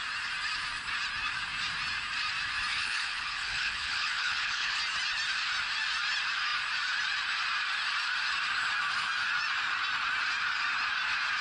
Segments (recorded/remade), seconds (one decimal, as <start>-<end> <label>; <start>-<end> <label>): 0.0-2.7 recorded; 2.7-4.8 remade; 4.8-11.4 recorded